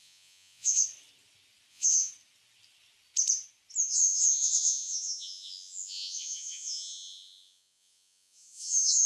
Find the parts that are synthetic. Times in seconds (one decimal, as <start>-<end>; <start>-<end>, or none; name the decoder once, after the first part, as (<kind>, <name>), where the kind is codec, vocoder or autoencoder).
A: 0.0-0.8 (vocoder, Vocos); 1.7-2.1; 3.8-9.1